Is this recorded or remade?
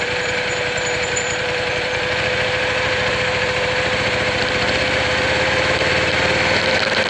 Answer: remade